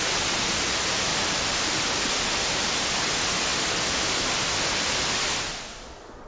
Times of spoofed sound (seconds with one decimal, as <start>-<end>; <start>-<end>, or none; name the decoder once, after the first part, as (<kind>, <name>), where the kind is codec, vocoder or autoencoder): 1.1-2.7 (vocoder, BigVGAN v2)